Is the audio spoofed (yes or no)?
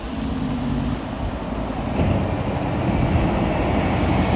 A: no